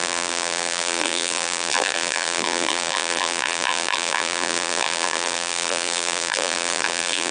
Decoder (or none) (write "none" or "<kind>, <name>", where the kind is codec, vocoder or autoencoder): vocoder, BigVGAN v2